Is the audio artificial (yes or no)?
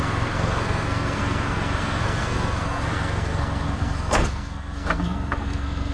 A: yes